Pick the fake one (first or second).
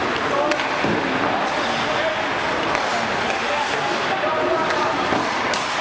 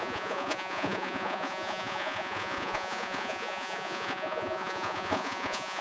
second